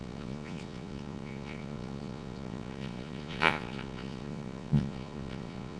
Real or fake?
fake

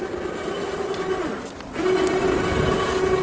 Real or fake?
real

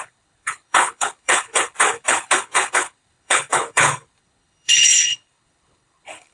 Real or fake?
fake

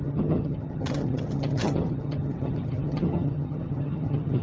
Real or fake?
fake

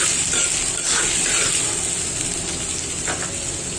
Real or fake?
real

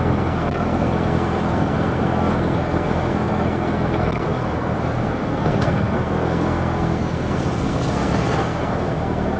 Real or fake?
fake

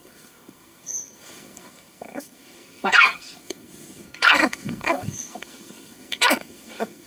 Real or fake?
fake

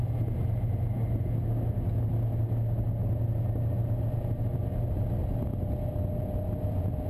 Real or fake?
real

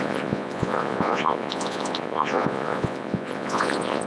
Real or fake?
fake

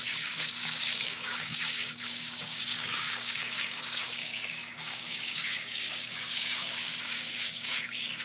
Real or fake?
fake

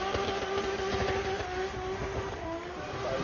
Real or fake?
real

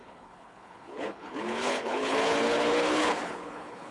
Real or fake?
fake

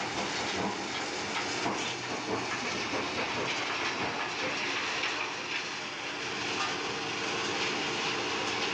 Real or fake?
real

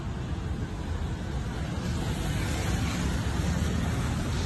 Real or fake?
real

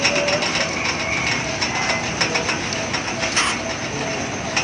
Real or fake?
real